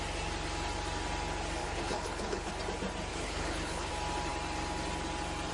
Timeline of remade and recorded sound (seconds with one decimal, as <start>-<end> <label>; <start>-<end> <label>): 0.0-1.6 recorded; 1.6-2.5 remade; 2.5-3.1 recorded; 3.1-3.9 remade; 3.9-5.5 recorded